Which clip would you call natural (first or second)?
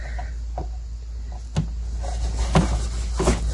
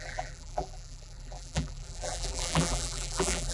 first